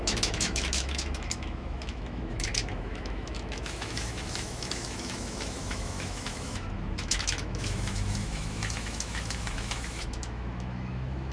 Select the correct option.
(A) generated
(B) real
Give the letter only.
A